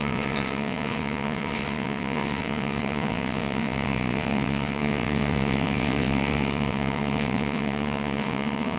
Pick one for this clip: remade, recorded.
remade